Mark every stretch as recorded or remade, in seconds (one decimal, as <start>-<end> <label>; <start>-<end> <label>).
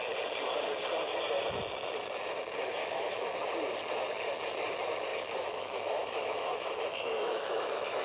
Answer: 0.0-2.8 recorded; 2.8-3.4 remade; 3.4-5.1 recorded; 5.1-8.0 remade